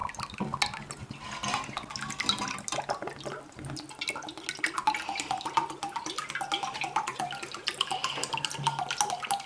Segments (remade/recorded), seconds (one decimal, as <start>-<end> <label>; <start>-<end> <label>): 0.0-9.5 recorded